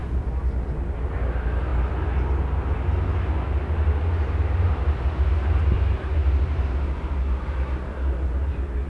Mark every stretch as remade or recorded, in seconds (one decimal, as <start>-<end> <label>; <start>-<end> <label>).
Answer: 0.0-8.9 recorded